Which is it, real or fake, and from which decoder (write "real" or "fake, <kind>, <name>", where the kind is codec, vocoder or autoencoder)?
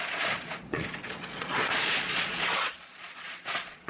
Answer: fake, vocoder, Vocos